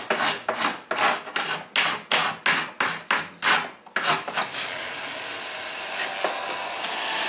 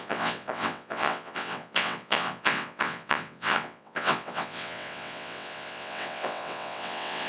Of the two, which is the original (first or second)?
first